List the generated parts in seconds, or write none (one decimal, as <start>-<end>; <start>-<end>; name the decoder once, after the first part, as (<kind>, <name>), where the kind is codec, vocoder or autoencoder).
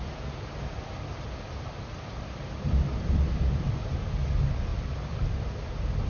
4.7-5.5 (vocoder, BigVGAN v2)